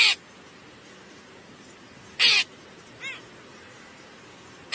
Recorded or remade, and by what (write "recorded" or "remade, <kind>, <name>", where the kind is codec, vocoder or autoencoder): recorded